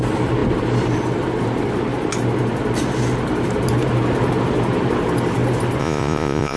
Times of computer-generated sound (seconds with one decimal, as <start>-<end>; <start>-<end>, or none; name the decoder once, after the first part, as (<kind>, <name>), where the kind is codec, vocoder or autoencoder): 5.8-6.6 (vocoder, Vocos)